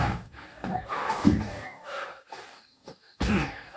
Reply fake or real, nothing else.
fake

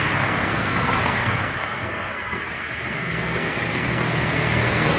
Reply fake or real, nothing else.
fake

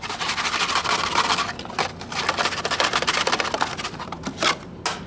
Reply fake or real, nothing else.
real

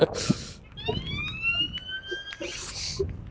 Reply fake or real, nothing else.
real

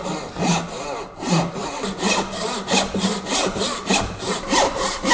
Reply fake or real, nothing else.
real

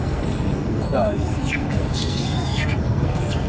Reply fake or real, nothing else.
fake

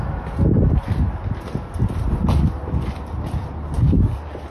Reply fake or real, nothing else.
real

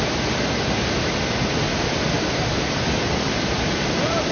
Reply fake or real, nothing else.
real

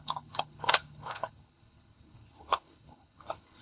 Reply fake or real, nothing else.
fake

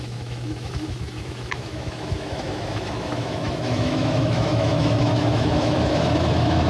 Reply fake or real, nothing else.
fake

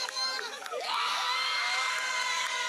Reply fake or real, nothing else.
fake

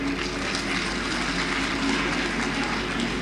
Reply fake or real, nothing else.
real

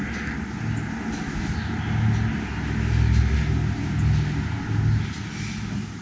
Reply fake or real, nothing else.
real